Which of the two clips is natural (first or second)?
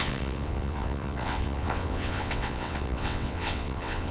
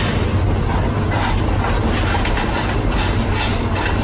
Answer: second